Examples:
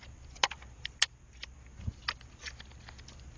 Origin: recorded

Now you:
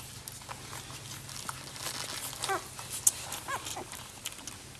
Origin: recorded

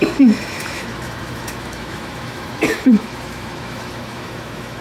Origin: remade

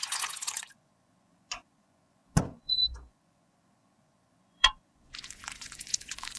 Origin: remade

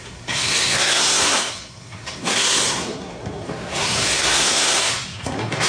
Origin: remade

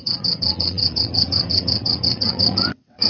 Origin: remade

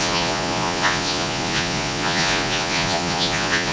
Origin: remade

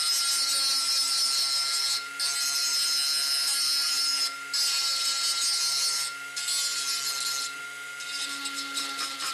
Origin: recorded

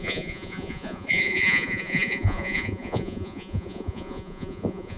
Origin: remade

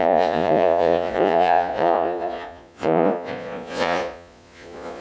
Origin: remade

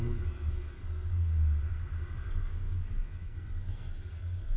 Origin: remade